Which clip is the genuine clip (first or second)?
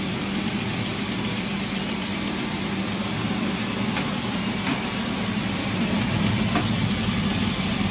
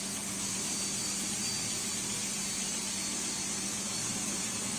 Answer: second